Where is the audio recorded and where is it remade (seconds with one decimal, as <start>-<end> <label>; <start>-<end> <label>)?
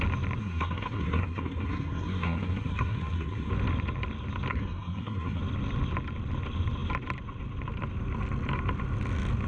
0.0-0.4 recorded; 0.4-3.5 remade; 3.5-4.5 recorded; 4.5-5.4 remade; 5.4-9.5 recorded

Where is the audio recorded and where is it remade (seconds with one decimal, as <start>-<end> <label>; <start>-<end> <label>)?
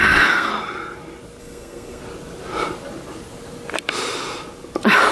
0.0-0.5 remade; 0.5-1.4 recorded; 1.4-2.0 remade; 2.0-5.1 recorded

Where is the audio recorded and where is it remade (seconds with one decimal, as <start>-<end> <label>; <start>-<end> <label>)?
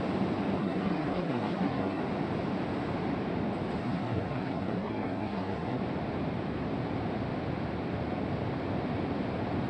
0.0-0.6 recorded; 0.6-2.0 remade; 2.0-3.8 recorded; 3.8-5.8 remade; 5.8-9.7 recorded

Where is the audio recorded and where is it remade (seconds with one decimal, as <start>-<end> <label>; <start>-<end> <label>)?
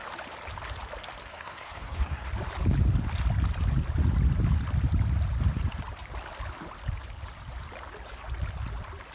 0.0-1.3 recorded; 1.3-2.3 remade; 2.3-9.1 recorded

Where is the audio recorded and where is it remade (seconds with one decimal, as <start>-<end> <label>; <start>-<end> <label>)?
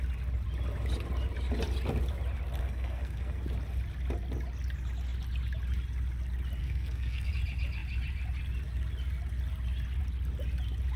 0.0-2.6 recorded; 2.6-3.4 remade; 3.4-6.6 recorded; 6.6-7.3 remade; 7.3-11.0 recorded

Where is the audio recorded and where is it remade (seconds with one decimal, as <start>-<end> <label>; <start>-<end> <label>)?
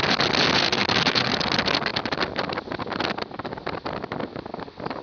0.0-0.6 recorded; 0.6-1.3 remade; 1.3-5.0 recorded